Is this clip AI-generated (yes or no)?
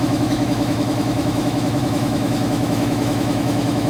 yes